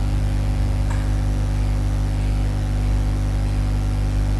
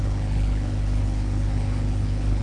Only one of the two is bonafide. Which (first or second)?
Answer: first